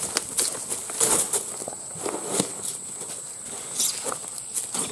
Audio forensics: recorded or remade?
recorded